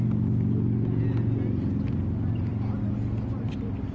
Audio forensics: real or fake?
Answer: real